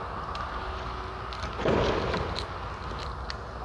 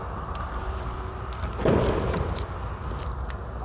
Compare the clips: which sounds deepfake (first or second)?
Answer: second